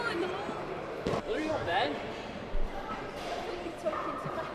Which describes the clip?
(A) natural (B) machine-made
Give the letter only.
B